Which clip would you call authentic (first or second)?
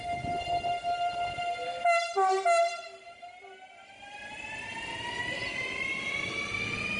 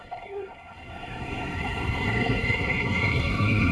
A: first